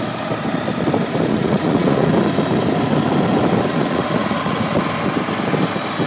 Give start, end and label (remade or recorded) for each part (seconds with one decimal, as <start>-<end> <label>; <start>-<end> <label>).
0.0-1.3 recorded; 1.3-2.1 remade; 2.1-3.7 recorded; 3.7-4.8 remade; 4.8-6.1 recorded